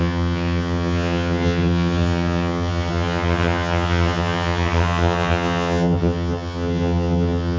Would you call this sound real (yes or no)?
no